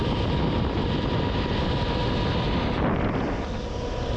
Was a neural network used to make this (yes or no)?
no